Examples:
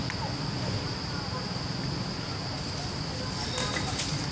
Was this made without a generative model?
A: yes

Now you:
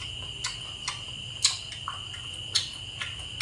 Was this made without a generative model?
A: yes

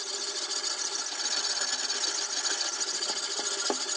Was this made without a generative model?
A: yes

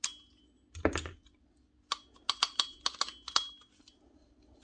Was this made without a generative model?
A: yes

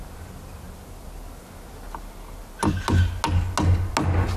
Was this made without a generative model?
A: yes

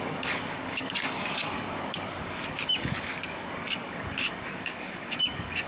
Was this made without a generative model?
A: no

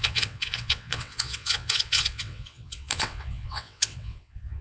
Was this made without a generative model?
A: no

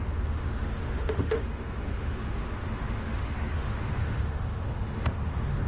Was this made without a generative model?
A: no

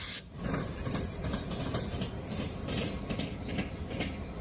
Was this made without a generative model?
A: yes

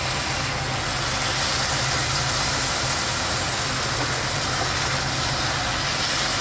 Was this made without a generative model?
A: yes